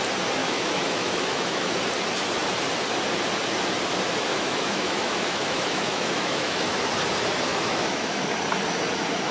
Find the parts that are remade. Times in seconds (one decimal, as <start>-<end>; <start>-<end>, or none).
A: 0.4-1.7; 4.3-6.8; 7.5-8.3